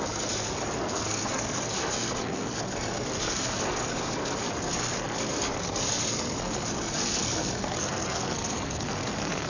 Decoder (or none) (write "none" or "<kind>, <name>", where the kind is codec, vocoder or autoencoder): codec, SNAC